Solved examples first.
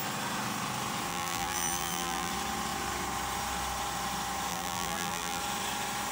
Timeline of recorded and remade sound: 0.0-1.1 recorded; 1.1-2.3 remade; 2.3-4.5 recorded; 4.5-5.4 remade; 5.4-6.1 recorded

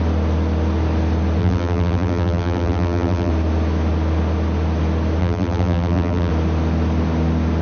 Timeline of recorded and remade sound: 0.0-1.4 recorded; 1.4-3.3 remade; 3.3-5.2 recorded; 5.2-6.3 remade; 6.3-7.6 recorded

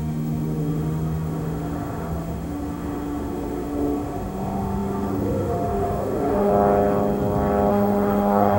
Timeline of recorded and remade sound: 0.0-6.5 remade; 6.5-7.7 recorded; 7.7-8.6 remade

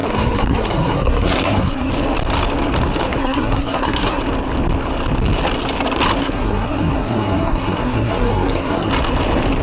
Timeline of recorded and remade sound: 0.0-1.9 remade; 1.9-3.2 recorded; 3.2-4.2 remade; 4.2-6.2 recorded; 6.2-8.9 remade; 8.9-9.6 recorded